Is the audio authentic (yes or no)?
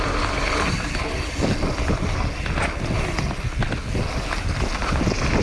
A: yes